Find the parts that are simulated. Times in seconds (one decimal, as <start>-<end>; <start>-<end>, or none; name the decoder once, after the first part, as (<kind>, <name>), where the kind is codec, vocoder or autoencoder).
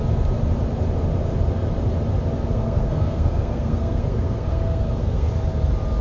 2.5-5.3 (codec, SNAC)